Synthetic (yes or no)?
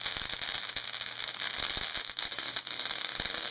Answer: no